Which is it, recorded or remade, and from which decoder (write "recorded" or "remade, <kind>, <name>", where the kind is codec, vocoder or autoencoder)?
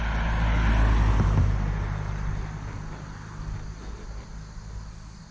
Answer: recorded